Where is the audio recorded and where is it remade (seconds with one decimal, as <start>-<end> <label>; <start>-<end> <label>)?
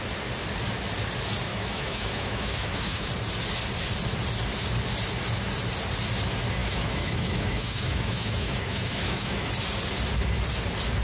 0.0-1.5 recorded; 1.5-3.1 remade; 3.1-6.6 recorded; 6.6-9.5 remade; 9.5-11.0 recorded